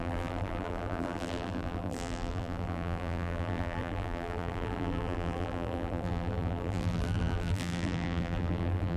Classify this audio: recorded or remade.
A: remade